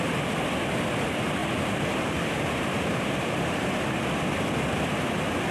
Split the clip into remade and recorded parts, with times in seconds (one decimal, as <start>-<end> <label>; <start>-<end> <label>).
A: 0.0-1.4 recorded; 1.4-3.7 remade; 3.7-5.5 recorded